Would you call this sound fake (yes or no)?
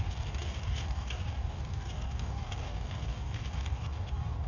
yes